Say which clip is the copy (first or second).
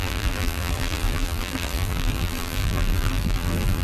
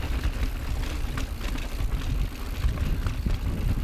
first